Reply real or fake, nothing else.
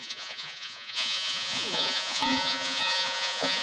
fake